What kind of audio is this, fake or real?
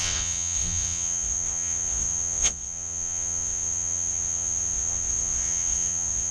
fake